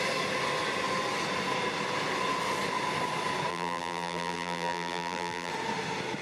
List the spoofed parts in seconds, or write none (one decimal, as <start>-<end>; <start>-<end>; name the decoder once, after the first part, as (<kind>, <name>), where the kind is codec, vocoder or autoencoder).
3.5-5.5 (vocoder, BigVGAN v2)